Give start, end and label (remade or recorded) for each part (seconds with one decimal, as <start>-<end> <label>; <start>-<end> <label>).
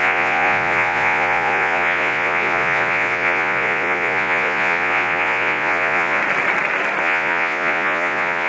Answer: 0.0-6.2 remade; 6.2-7.0 recorded; 7.0-8.5 remade